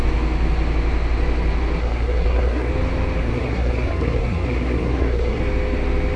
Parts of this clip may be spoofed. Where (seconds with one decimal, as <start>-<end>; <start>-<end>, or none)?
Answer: 1.8-2.7; 3.2-5.4